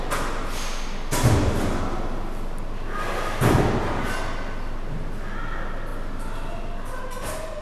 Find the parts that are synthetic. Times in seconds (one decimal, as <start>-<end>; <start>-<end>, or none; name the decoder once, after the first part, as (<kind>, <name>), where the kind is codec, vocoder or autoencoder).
none